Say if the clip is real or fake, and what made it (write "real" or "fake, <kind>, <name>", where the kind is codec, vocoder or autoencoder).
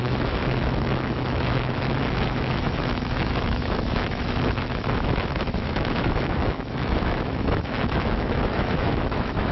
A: fake, autoencoder, DAC-VAE